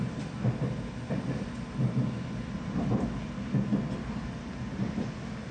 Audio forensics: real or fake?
real